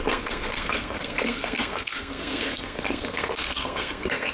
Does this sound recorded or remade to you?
remade